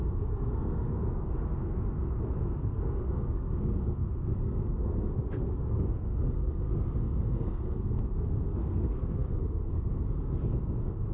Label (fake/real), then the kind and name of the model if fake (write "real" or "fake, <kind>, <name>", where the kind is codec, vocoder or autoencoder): fake, codec, SNAC